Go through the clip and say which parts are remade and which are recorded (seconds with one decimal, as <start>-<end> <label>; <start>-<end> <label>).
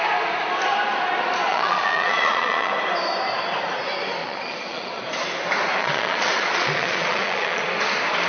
0.0-1.5 recorded; 1.5-2.7 remade; 2.7-4.2 recorded; 4.2-5.0 remade; 5.0-5.8 recorded; 5.8-7.6 remade; 7.6-8.3 recorded